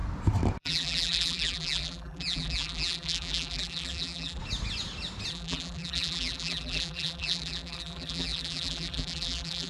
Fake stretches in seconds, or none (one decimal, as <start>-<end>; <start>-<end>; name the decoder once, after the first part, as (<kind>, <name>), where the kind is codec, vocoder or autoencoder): 0.6-4.4 (vocoder, BigVGAN v2); 5.3-9.7

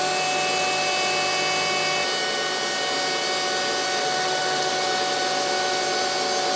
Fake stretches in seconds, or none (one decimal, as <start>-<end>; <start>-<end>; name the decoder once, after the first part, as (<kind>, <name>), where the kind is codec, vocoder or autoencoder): 4.0-4.7 (autoencoder, DAC-VAE)

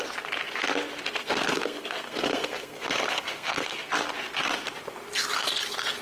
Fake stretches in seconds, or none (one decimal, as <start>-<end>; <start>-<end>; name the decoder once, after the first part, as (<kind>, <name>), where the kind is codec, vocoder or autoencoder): 1.2-3.9 (codec, SNAC)

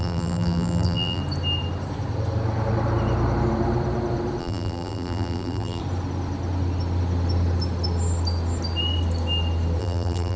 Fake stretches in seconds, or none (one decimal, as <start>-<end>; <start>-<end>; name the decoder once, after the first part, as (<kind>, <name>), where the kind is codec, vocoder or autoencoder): 0.0-1.2 (vocoder, BigVGAN v2); 4.4-5.8; 9.8-10.4

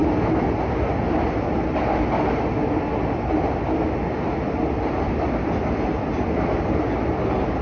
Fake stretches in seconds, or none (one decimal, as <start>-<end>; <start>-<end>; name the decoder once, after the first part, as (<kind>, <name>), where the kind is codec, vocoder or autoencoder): none